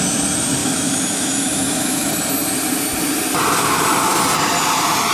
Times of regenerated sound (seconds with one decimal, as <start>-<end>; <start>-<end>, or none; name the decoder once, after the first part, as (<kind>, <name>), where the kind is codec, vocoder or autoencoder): 0.6-2.1 (autoencoder, DAC-VAE)